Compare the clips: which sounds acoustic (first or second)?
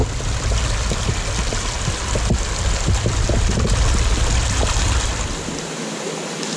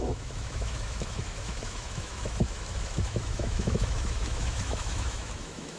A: first